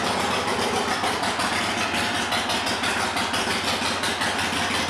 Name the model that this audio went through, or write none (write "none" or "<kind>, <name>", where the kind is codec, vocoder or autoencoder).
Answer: none